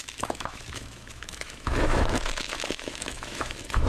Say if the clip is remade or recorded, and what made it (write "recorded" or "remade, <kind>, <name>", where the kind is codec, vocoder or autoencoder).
remade, autoencoder, DAC-VAE